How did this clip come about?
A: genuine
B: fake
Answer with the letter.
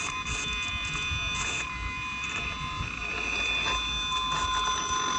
A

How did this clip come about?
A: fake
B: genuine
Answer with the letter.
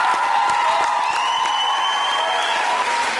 B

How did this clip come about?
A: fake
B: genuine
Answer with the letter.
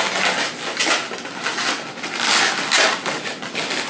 B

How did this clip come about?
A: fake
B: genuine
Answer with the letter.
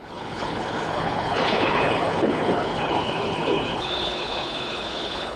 A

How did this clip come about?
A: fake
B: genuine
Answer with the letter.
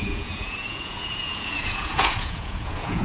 A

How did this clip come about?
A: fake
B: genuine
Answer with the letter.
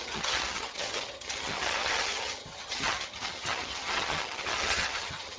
A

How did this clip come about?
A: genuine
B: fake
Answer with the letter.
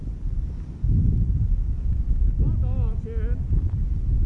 A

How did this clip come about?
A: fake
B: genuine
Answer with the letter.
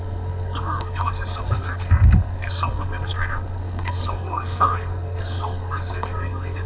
A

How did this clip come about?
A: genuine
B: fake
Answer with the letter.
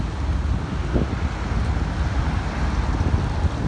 A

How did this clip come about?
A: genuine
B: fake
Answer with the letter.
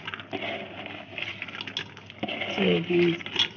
A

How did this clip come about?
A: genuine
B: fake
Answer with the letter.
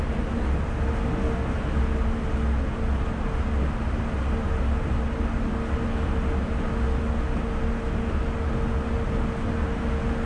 A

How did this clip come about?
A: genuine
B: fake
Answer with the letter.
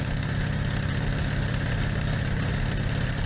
A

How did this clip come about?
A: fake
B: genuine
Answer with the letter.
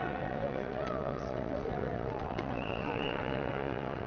A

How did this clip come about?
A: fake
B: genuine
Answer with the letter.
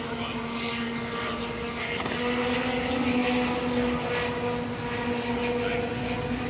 B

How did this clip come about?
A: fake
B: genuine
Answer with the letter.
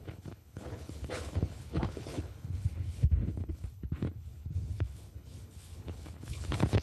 A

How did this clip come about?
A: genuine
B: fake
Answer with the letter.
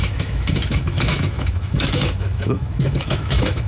B